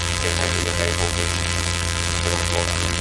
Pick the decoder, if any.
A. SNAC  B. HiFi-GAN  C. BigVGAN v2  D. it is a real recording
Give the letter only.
C